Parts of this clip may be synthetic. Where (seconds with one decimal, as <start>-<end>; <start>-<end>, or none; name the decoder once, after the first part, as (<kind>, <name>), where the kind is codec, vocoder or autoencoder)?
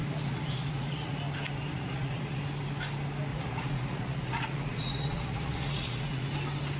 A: 0.0-1.2 (vocoder, Vocos); 1.7-2.4; 3.3-6.3